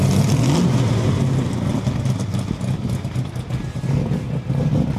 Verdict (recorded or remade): recorded